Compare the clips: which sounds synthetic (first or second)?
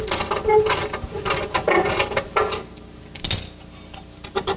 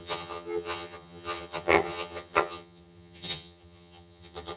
second